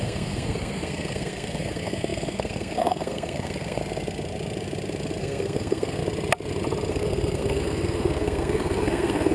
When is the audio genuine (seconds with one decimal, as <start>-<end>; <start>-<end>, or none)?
3.8-5.2; 6.0-6.9